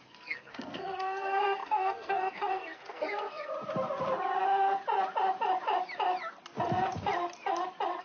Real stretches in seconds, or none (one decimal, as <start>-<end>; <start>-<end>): 3.5-8.0